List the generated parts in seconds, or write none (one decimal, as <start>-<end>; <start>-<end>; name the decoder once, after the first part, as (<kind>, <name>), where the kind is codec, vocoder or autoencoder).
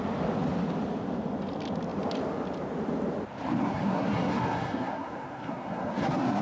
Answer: 3.6-6.4 (codec, SNAC)